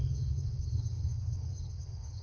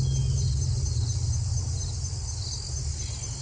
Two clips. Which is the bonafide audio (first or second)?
second